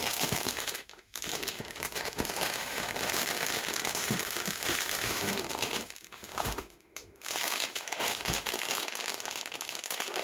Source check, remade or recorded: remade